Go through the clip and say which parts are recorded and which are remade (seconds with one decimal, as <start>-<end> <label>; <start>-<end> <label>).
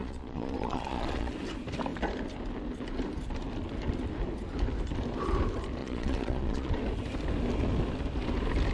0.0-1.3 remade; 1.3-5.8 recorded; 5.8-6.7 remade; 6.7-8.7 recorded